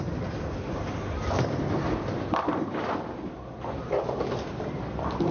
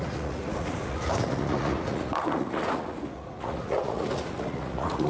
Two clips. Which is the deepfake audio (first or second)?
second